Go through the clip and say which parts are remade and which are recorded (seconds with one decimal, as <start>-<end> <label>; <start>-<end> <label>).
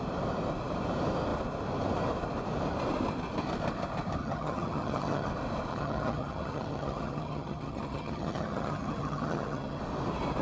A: 0.0-4.2 recorded; 4.2-5.3 remade; 5.3-5.7 recorded; 5.7-9.8 remade; 9.8-10.4 recorded